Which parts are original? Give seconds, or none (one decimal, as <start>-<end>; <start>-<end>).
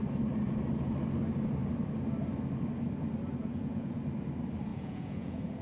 0.0-3.4; 4.0-4.7